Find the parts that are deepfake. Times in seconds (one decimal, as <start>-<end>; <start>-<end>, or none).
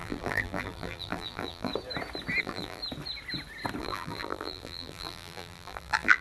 0.0-1.7; 2.4-2.8; 3.8-6.2